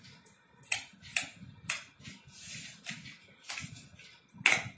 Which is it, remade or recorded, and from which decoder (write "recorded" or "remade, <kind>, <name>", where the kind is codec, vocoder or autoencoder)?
recorded